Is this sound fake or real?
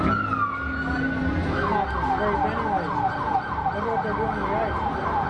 real